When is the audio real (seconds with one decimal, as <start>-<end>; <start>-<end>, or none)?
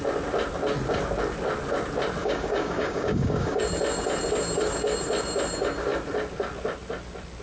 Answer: 0.0-2.2; 3.6-7.4